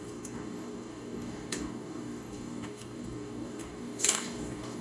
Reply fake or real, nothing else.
fake